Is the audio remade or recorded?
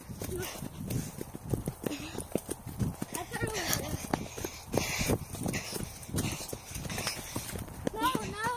recorded